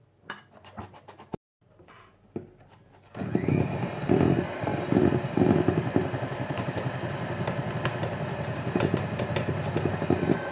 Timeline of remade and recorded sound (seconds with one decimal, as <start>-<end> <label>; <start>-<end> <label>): 0.0-10.5 recorded